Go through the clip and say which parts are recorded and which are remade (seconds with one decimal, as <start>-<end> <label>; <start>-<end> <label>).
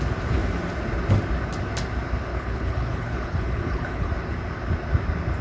0.0-2.3 recorded; 2.3-4.1 remade; 4.1-5.4 recorded